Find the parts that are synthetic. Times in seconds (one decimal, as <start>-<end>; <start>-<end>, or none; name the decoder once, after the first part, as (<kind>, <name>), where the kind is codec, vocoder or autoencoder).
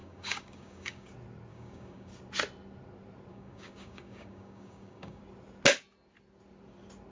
0.0-1.1 (codec, DAC); 1.5-2.1; 3.3-5.2